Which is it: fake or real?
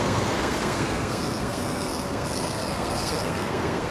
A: fake